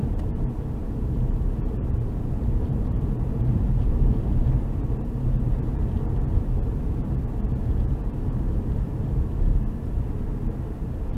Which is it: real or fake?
fake